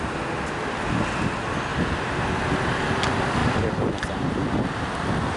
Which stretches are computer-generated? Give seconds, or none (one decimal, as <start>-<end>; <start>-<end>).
1.7-2.4; 3.4-4.3